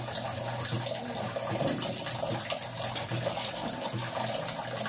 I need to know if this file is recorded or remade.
recorded